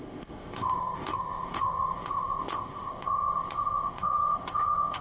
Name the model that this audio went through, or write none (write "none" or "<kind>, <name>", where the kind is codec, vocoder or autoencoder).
codec, ZipCodec